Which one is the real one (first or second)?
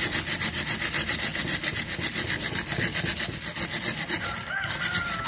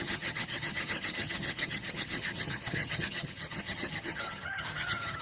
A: first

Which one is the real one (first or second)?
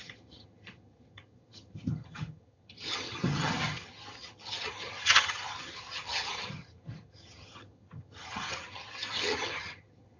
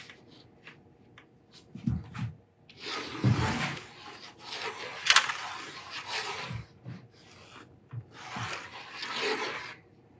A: second